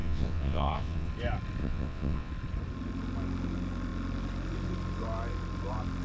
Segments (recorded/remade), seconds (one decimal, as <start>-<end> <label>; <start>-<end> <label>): 0.0-1.1 remade; 1.1-1.6 recorded; 1.6-2.3 remade; 2.3-6.0 recorded